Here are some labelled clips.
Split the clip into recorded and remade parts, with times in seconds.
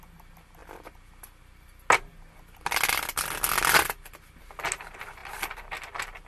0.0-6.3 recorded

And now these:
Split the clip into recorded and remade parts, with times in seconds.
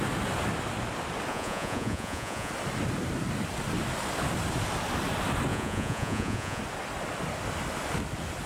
0.0-1.3 recorded; 1.3-2.5 remade; 2.5-5.5 recorded; 5.5-6.6 remade; 6.6-8.5 recorded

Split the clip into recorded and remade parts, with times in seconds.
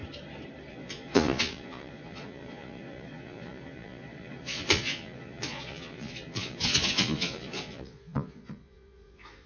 0.0-0.7 recorded; 0.7-9.5 remade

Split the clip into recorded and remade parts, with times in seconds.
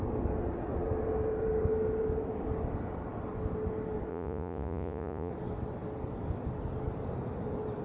0.0-4.1 recorded; 4.1-5.3 remade; 5.3-7.8 recorded